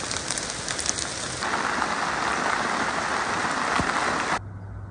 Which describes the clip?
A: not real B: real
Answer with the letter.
B